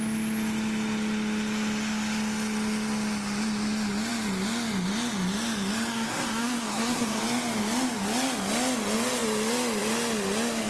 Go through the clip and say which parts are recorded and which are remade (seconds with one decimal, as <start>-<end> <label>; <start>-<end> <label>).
0.0-5.9 recorded; 5.9-7.2 remade; 7.2-10.7 recorded